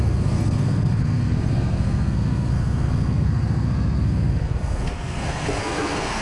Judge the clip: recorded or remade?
remade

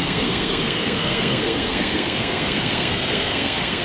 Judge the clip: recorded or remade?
remade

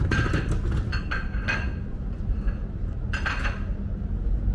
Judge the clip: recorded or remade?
recorded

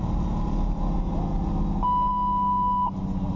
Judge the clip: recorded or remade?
recorded